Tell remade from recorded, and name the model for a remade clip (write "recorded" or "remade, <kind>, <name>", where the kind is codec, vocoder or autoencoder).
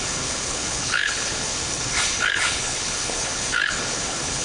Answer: remade, codec, HILCodec